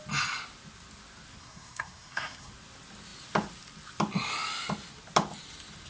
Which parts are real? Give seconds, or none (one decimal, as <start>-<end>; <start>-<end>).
0.0-1.4; 2.5-5.9